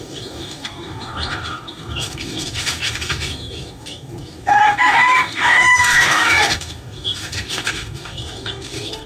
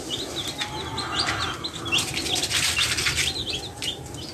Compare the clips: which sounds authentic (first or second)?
second